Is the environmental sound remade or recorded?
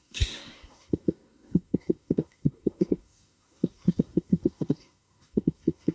remade